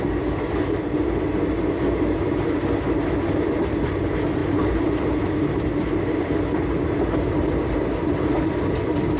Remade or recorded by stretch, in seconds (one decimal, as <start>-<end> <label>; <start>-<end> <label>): 0.0-9.2 recorded